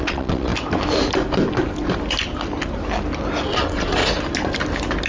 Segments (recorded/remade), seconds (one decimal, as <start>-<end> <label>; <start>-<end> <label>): 0.0-0.5 remade; 0.5-3.6 recorded; 3.6-4.0 remade; 4.0-5.1 recorded